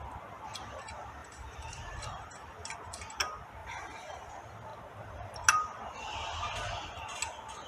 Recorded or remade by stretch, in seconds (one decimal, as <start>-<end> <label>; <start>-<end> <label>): 0.0-1.2 recorded; 1.2-2.0 remade; 2.0-3.6 recorded; 3.6-4.3 remade; 4.3-7.7 recorded